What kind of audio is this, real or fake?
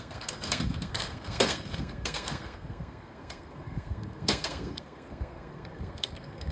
fake